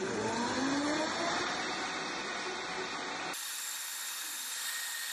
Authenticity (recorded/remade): recorded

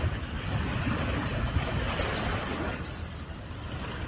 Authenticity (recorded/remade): recorded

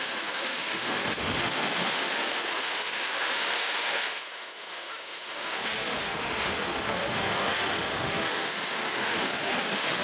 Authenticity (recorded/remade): remade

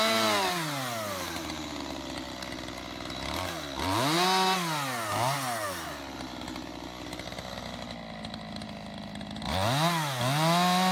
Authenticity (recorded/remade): recorded